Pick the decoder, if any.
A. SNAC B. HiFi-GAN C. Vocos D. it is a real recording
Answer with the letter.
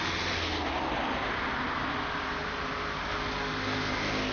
D